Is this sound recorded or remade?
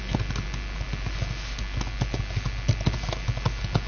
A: recorded